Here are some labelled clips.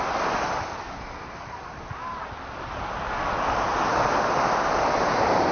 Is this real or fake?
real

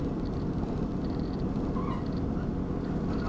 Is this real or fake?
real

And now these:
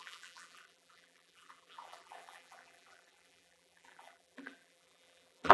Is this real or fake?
fake